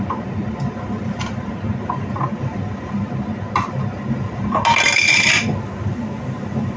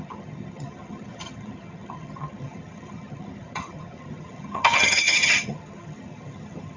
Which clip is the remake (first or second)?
second